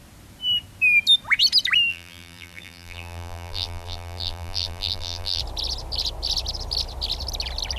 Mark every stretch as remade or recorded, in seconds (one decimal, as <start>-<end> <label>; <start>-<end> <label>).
0.0-1.9 recorded; 1.9-5.4 remade; 5.4-7.8 recorded